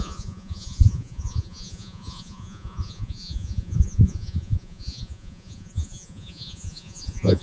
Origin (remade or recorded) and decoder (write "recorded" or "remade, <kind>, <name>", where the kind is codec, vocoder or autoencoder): remade, vocoder, Vocos